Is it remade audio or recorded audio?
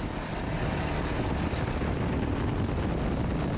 recorded